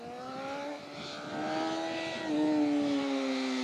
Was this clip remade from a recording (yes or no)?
no